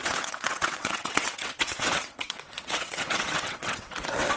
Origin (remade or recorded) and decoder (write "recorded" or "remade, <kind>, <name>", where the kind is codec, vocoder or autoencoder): remade, vocoder, WaveNeXt